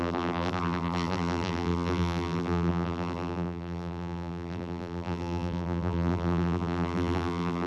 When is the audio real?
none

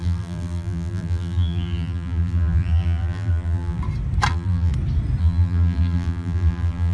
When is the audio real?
3.8-4.3; 4.7-5.2

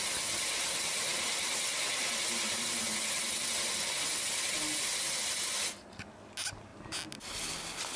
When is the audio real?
0.0-8.0